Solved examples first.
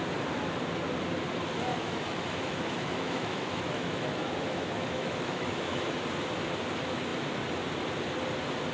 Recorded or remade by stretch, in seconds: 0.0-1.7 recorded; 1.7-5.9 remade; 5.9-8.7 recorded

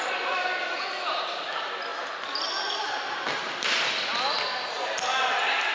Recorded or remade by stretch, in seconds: 0.0-5.7 recorded

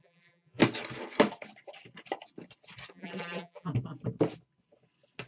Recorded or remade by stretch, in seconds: 0.0-0.6 remade; 0.6-2.9 recorded; 2.9-3.7 remade; 3.7-5.3 recorded